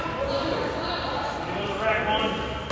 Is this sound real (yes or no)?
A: yes